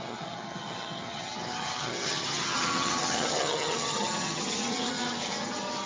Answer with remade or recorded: remade